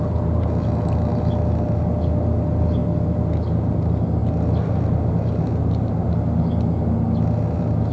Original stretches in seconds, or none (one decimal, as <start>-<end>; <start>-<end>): 0.0-7.9